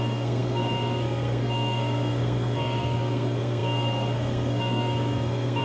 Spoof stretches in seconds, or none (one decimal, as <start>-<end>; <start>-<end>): 0.0-5.6